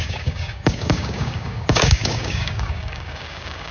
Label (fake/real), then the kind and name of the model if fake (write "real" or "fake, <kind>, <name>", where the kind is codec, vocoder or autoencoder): fake, codec, DAC